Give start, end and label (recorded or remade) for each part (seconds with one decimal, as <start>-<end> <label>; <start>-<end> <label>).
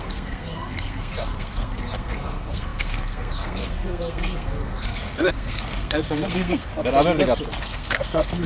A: 0.0-6.7 remade; 6.7-7.6 recorded; 7.6-8.5 remade